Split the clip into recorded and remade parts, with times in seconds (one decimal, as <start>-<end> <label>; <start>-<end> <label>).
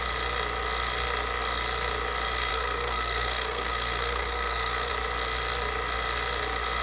0.0-2.5 recorded; 2.5-4.9 remade; 4.9-6.8 recorded